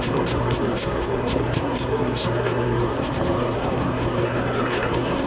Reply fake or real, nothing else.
fake